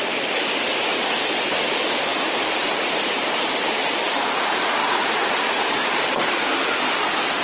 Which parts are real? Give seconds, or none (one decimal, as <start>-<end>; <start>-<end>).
0.0-2.1; 3.9-4.8; 6.3-7.4